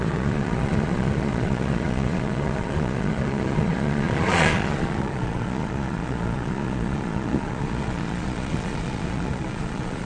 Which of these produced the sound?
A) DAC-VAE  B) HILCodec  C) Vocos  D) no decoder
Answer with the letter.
C